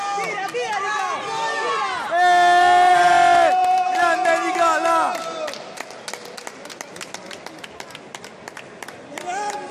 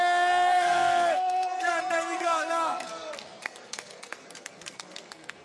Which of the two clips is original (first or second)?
first